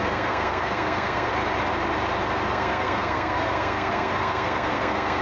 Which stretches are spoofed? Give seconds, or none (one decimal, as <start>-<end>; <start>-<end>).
0.0-1.3; 2.5-5.2